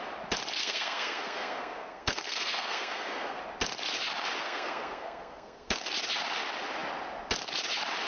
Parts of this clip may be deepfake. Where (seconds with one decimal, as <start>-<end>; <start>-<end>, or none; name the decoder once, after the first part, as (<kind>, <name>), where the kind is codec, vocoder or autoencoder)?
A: 0.6-3.4 (codec, SNAC); 4.4-5.9